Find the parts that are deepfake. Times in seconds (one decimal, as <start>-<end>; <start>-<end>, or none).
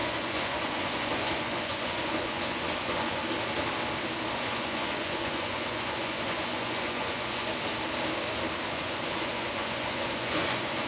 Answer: 0.0-3.2; 4.3-7.5; 8.7-10.9